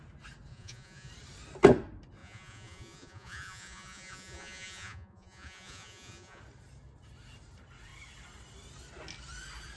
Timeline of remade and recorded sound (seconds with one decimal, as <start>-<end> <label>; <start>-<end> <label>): 0.0-0.5 recorded; 0.5-1.1 remade; 1.1-2.2 recorded; 2.2-6.4 remade; 6.4-9.8 recorded